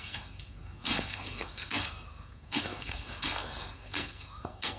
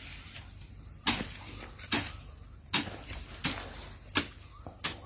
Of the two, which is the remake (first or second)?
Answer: first